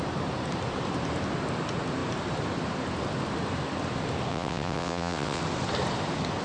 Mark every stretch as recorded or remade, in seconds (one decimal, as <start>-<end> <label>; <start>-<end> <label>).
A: 0.0-4.3 recorded; 4.3-5.4 remade; 5.4-6.4 recorded